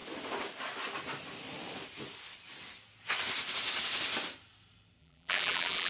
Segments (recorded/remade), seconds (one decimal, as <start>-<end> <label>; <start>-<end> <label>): 0.0-5.0 recorded; 5.0-5.9 remade